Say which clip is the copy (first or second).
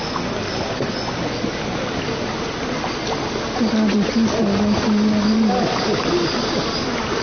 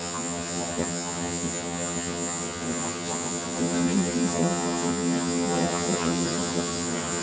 second